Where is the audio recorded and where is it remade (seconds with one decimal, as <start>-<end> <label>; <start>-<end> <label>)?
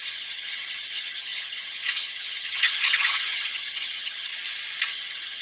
0.0-4.3 remade; 4.3-4.9 recorded; 4.9-5.4 remade